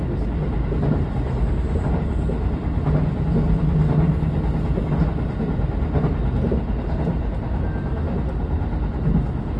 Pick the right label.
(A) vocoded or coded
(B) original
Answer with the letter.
B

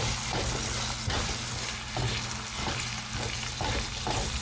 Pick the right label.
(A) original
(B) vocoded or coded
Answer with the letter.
A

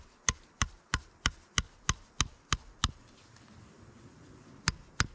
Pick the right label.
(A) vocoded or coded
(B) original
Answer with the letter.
B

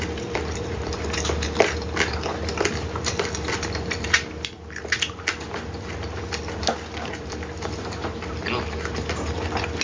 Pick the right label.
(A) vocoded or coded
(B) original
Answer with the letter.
A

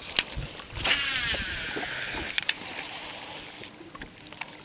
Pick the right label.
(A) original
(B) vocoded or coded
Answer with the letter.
A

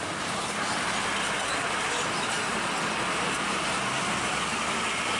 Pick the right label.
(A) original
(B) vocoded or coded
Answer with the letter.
B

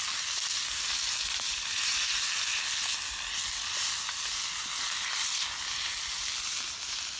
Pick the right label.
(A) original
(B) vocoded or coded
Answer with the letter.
A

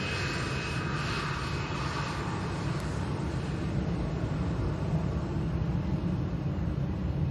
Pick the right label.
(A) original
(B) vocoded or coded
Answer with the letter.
A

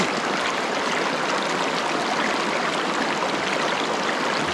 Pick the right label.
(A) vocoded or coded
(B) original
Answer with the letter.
B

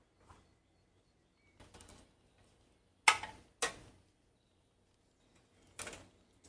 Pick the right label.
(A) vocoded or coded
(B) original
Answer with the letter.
B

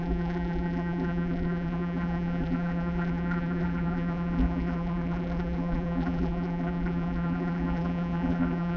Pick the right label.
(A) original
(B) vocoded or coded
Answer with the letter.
B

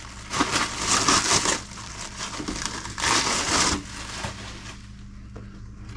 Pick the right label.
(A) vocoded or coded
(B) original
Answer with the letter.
B